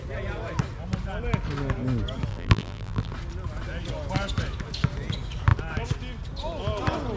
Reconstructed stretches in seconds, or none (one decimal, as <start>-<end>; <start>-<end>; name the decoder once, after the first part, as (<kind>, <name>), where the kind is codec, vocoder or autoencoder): 2.3-3.1 (vocoder, BigVGAN v2)